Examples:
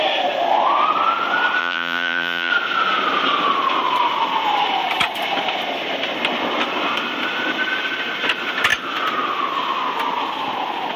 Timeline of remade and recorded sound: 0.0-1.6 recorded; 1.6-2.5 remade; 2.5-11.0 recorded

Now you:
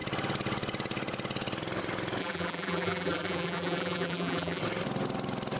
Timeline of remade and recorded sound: 0.0-2.2 recorded; 2.2-4.6 remade; 4.6-5.6 recorded

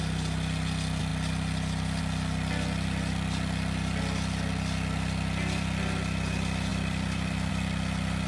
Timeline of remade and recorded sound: 0.0-6.7 recorded; 6.7-7.5 remade; 7.5-8.3 recorded